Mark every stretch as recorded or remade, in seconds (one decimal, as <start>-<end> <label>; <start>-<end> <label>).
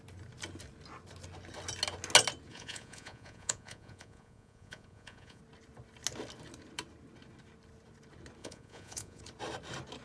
0.0-2.5 recorded; 2.5-5.4 remade; 5.4-8.4 recorded; 8.4-9.2 remade; 9.2-10.0 recorded